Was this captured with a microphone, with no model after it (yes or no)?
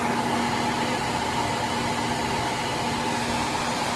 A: yes